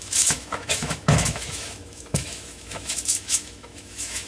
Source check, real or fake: fake